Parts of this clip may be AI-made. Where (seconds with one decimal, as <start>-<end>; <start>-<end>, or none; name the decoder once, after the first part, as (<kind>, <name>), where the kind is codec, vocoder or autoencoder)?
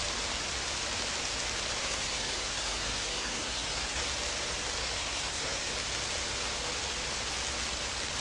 1.8-4.0 (codec, SNAC); 4.8-5.7